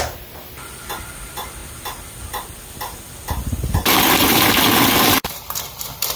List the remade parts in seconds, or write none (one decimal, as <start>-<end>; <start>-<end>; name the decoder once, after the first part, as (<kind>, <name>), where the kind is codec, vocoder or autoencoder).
0.0-6.2 (vocoder, BigVGAN v2)